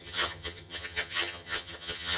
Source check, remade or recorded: remade